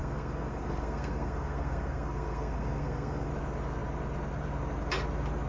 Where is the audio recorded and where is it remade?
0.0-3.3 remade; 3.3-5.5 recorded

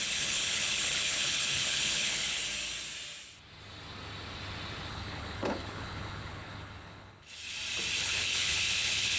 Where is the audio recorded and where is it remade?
0.0-2.4 remade; 2.4-4.9 recorded; 4.9-7.4 remade; 7.4-8.0 recorded; 8.0-9.2 remade

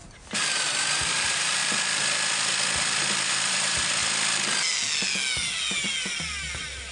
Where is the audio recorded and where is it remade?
0.0-1.6 remade; 1.6-3.3 recorded; 3.3-4.0 remade; 4.0-6.9 recorded

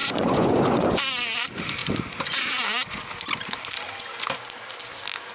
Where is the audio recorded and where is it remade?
0.0-1.0 remade; 1.0-5.3 recorded

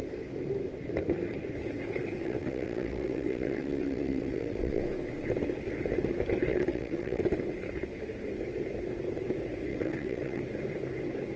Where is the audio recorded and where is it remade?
0.0-2.2 recorded; 2.2-4.8 remade; 4.8-6.5 recorded; 6.5-7.2 remade; 7.2-9.7 recorded; 9.7-10.4 remade; 10.4-11.4 recorded

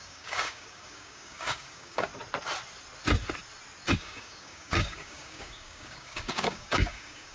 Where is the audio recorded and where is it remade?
0.0-2.1 remade; 2.1-4.0 recorded; 4.0-7.3 remade

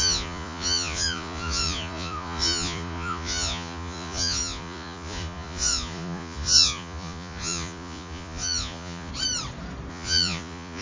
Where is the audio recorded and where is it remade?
0.0-9.1 remade; 9.1-9.9 recorded; 9.9-10.8 remade